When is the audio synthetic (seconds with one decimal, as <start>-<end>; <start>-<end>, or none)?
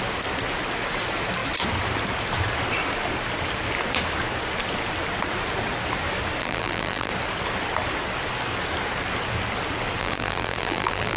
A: 6.4-7.1; 10.0-11.2